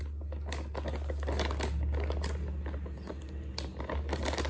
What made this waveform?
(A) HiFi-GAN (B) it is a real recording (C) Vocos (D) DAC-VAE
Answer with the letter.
B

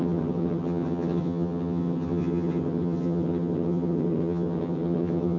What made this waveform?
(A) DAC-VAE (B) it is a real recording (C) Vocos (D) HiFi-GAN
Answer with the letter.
D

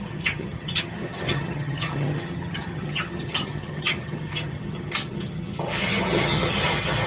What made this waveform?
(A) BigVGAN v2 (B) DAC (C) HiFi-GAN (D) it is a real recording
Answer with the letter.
C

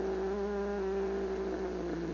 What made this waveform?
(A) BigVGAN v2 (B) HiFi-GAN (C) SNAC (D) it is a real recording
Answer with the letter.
D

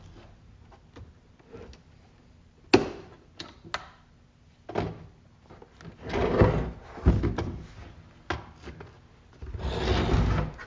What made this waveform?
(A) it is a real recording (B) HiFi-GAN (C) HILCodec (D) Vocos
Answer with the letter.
A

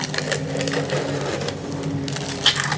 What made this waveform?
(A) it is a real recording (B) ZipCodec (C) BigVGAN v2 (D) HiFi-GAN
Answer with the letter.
A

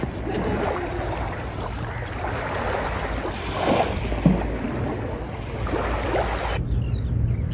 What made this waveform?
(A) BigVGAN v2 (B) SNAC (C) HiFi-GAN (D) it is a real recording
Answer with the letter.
D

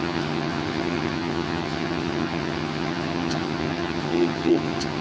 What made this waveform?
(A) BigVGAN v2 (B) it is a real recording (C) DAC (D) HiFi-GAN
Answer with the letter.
D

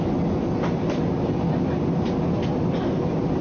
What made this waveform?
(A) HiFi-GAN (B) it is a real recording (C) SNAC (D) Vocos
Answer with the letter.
B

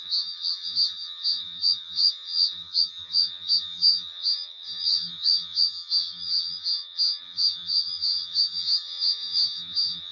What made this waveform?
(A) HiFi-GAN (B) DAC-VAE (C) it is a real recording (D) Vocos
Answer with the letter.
A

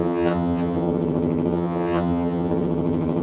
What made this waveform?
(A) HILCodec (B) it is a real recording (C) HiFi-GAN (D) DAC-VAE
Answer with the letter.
C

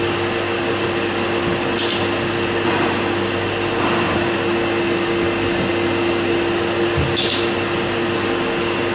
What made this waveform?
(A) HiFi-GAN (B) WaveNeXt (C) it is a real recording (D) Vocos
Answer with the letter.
C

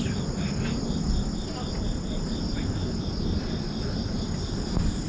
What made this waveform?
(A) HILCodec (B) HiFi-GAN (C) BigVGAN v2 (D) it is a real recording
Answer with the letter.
D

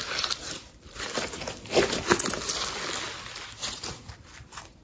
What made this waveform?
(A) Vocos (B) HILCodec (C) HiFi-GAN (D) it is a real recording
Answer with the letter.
D